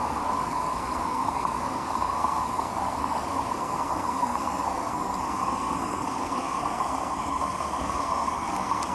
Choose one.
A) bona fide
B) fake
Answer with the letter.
B